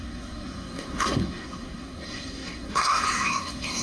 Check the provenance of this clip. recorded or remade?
remade